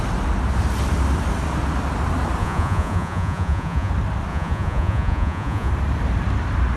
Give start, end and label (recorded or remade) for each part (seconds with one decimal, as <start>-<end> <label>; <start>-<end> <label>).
0.0-2.4 recorded; 2.4-3.9 remade; 3.9-4.3 recorded; 4.3-5.7 remade; 5.7-6.8 recorded